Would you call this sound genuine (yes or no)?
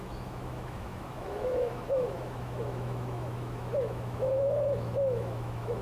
no